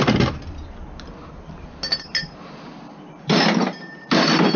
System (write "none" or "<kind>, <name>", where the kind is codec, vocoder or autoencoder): none